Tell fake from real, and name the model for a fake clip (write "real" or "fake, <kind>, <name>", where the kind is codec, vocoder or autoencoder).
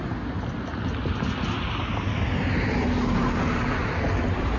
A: real